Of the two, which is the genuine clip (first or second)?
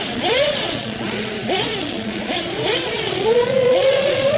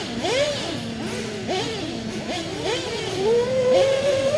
second